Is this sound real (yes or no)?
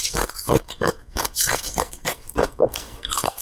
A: no